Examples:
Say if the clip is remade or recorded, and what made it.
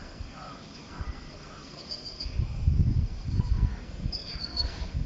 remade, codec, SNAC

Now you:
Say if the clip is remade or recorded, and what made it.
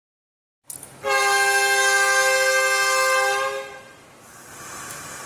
recorded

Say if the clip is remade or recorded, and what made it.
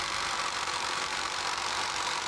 remade, vocoder, BigVGAN v2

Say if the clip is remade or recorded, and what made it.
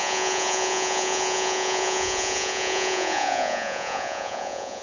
remade, vocoder, Vocos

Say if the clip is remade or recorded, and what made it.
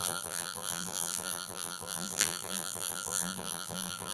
remade, vocoder, BigVGAN v2